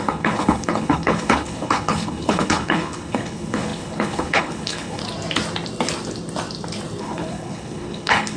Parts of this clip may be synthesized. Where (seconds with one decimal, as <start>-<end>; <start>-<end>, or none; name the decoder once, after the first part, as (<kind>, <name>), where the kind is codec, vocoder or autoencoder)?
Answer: 0.0-5.0 (codec, HILCodec); 7.0-8.4